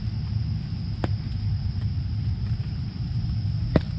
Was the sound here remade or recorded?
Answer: recorded